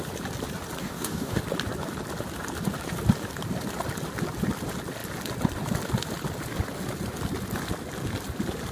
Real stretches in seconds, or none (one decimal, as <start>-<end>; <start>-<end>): 0.0-0.8; 1.4-8.7